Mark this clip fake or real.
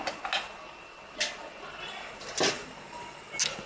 real